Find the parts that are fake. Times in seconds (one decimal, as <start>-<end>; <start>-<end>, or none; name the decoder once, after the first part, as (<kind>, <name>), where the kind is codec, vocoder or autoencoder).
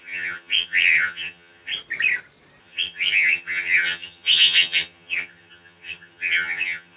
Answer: 0.0-1.7 (vocoder, HiFi-GAN); 2.6-7.0